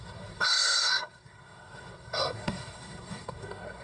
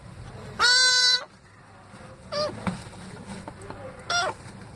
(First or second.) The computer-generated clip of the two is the first